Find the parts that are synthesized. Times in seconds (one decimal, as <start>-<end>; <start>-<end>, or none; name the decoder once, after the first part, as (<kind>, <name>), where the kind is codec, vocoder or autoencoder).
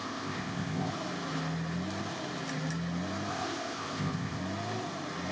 0.0-0.9 (codec, ZipCodec); 3.3-4.4